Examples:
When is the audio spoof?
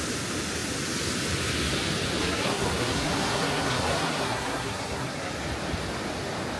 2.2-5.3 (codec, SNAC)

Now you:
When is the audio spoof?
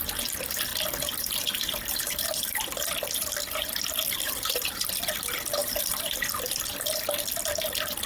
0.7-5.1 (vocoder, BigVGAN v2); 5.6-6.2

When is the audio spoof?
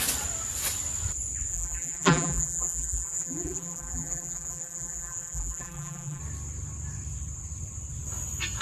1.5-6.2 (vocoder, BigVGAN v2)